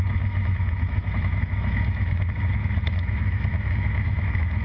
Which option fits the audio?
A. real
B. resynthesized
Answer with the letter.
B